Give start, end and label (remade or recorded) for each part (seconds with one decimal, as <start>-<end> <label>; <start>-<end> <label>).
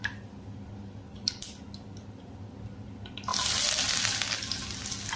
0.0-1.1 recorded; 1.1-2.6 remade; 2.6-3.3 recorded; 3.3-4.0 remade; 4.0-5.2 recorded